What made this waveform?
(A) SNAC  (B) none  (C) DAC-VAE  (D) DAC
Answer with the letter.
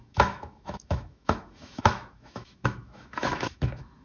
C